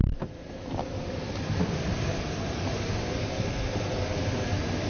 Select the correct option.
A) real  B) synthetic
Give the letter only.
A